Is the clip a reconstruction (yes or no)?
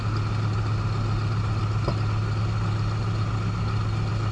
no